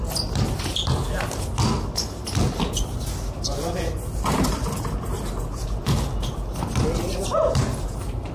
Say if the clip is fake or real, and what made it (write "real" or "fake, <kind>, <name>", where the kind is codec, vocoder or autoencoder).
real